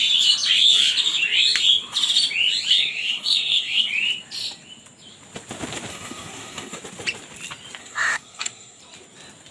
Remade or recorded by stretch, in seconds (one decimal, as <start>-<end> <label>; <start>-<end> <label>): 0.0-2.7 recorded; 2.7-3.9 remade; 3.9-5.9 recorded; 5.9-6.8 remade; 6.8-7.8 recorded; 7.8-8.8 remade; 8.8-9.5 recorded